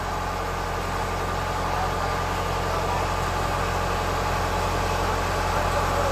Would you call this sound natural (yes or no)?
yes